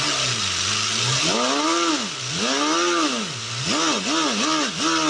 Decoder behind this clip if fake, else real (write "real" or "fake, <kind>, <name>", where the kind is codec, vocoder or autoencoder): real